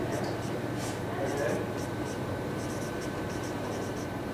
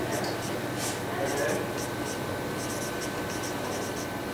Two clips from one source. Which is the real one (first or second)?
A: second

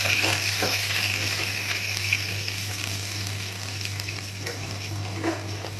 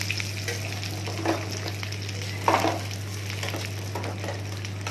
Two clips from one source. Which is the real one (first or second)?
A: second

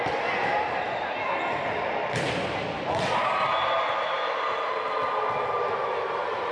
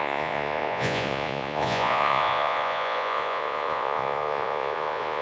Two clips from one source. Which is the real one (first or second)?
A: first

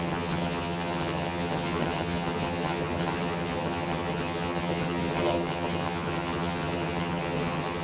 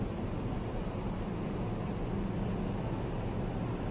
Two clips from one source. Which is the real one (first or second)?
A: second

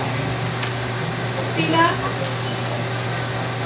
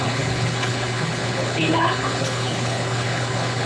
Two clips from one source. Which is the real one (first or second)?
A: first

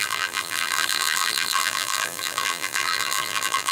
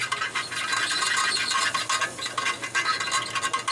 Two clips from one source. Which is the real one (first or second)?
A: second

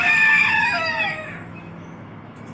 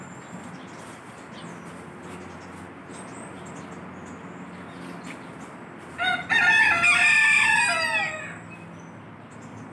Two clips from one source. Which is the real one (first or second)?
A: second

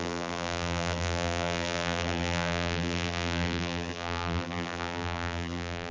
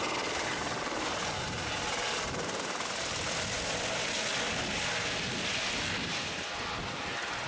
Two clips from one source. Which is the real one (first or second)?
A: second